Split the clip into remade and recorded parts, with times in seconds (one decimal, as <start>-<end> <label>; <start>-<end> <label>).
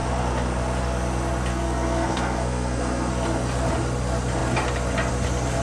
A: 0.0-1.5 recorded; 1.5-3.1 remade; 3.1-5.6 recorded